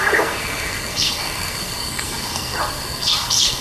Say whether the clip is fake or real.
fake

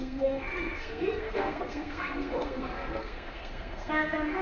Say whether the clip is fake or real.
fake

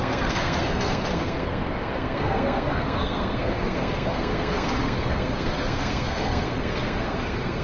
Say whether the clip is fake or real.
fake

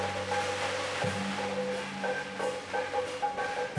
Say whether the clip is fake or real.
real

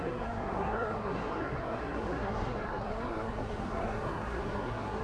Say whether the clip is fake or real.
fake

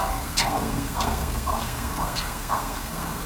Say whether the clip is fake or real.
fake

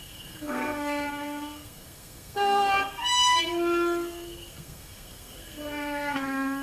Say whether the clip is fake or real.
fake